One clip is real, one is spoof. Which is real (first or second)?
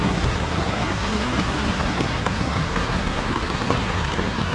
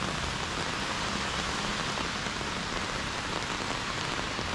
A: second